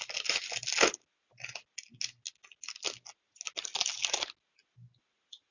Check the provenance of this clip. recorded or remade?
recorded